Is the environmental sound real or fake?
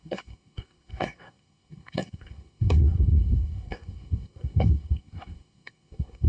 fake